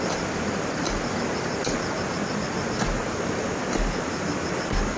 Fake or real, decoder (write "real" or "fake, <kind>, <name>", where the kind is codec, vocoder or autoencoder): real